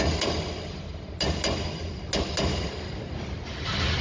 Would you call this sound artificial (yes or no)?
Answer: no